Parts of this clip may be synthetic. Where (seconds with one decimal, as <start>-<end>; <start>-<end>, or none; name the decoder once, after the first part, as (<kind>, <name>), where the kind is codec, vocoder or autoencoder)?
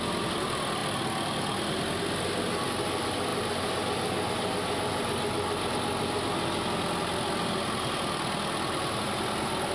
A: none